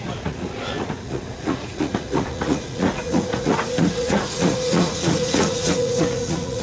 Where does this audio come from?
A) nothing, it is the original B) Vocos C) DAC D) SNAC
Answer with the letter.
B